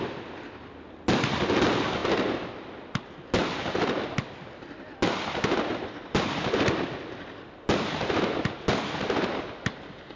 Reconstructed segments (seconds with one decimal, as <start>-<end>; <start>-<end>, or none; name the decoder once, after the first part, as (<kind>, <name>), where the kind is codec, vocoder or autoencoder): none